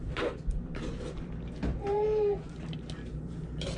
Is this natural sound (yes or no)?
yes